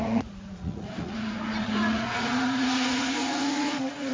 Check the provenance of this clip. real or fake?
fake